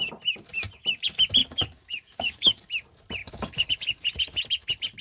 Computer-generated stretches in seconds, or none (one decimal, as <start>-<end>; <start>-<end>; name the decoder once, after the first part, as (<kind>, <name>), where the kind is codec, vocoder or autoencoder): 1.4-2.7 (codec, DAC); 3.2-3.7